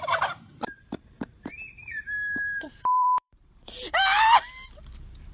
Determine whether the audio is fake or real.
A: fake